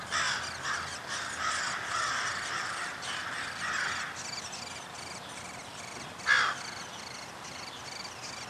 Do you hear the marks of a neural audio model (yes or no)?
no